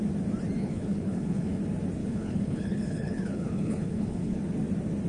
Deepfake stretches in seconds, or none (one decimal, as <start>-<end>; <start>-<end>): 0.6-1.6; 2.0-4.4